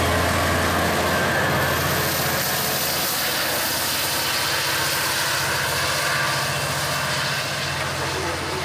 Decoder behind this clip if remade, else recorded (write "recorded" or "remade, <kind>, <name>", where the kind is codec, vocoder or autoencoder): recorded